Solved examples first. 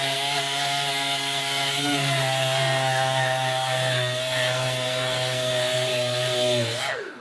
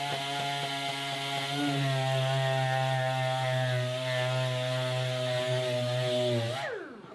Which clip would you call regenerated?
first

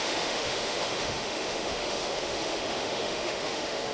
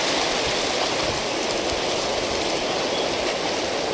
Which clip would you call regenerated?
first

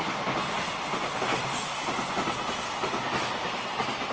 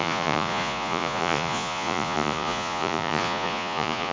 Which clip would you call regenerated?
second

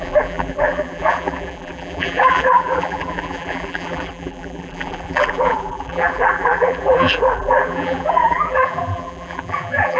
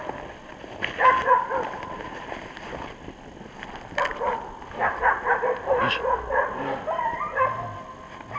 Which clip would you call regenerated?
first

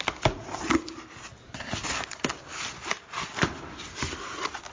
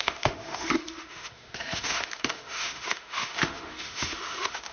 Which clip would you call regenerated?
second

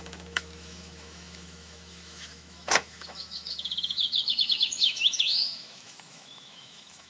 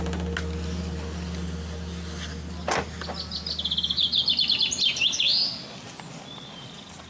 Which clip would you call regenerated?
first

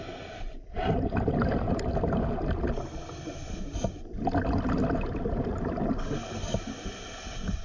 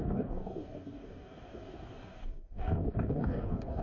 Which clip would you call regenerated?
second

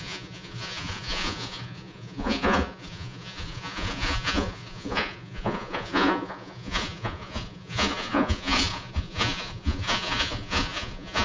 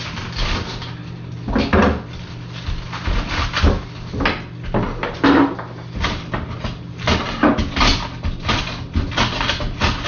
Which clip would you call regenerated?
first